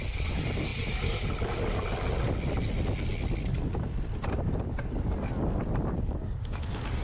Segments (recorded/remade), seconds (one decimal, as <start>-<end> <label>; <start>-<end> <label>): 0.0-7.0 recorded